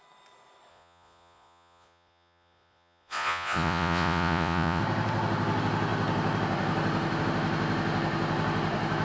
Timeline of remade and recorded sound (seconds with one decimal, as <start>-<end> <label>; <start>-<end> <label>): 0.0-0.7 recorded; 0.7-4.8 remade; 4.8-9.0 recorded